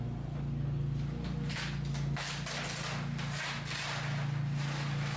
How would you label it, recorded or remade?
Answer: recorded